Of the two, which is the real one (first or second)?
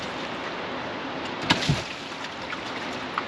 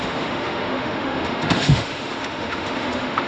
first